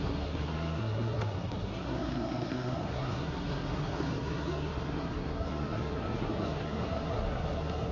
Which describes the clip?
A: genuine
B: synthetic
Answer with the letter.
B